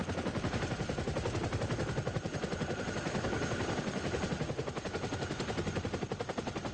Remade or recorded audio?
recorded